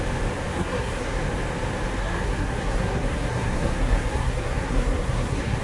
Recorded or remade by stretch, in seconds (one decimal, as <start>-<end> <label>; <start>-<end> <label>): 0.0-0.5 recorded; 0.5-1.2 remade; 1.2-2.0 recorded; 2.0-5.6 remade